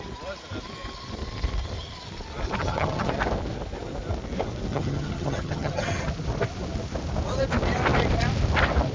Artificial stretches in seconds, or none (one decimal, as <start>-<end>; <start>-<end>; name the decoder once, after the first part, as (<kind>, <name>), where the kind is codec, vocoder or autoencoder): 2.6-3.1 (vocoder, HiFi-GAN); 4.7-6.0